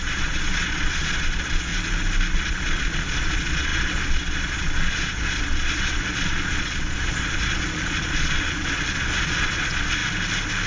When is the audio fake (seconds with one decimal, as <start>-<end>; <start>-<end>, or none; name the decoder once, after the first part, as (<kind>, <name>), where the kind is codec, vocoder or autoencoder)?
0.0-1.7 (vocoder, Vocos); 2.3-10.0